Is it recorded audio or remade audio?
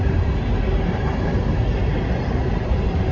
remade